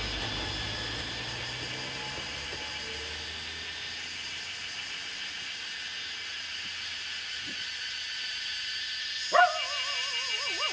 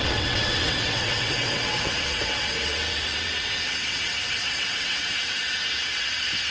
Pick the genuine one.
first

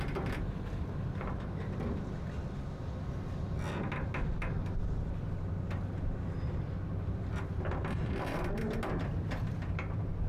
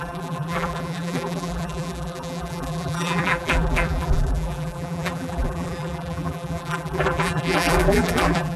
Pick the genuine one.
first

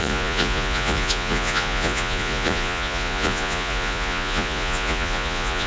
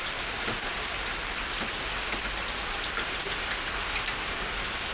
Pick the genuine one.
second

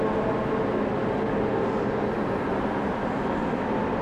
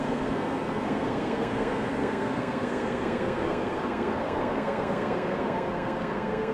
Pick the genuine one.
first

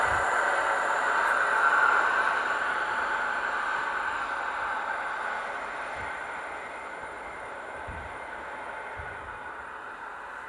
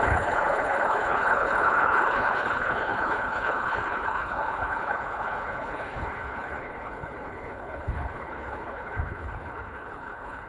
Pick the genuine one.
first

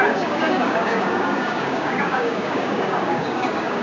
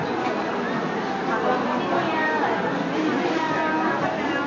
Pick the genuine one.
second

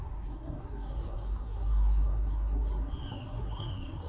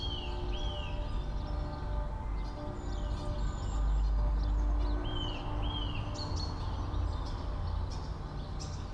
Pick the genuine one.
second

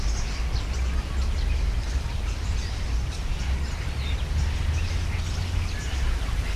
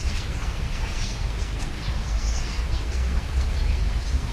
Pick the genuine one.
first